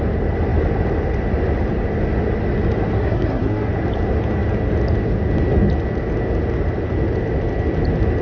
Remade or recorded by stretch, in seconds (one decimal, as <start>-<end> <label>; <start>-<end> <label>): 0.0-3.0 recorded; 3.0-3.7 remade; 3.7-8.2 recorded